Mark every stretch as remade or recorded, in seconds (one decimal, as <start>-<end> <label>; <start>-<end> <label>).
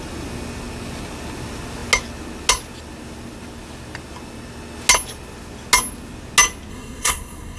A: 0.0-6.7 recorded; 6.7-7.6 remade